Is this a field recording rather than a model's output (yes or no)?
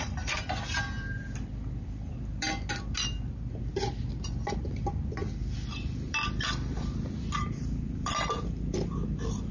no